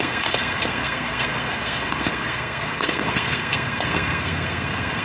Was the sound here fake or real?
fake